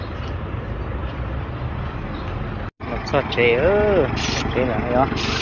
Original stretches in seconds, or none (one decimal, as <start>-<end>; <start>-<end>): 0.0-5.4